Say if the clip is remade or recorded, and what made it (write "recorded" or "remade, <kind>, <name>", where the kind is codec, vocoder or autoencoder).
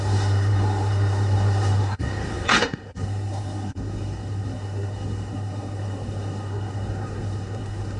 remade, codec, SNAC